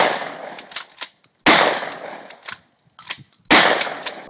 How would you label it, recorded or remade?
recorded